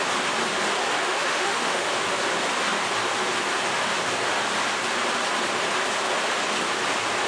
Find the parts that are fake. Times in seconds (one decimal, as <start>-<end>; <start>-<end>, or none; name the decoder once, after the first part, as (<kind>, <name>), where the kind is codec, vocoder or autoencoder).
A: 1.0-1.9 (autoencoder, DAC-VAE)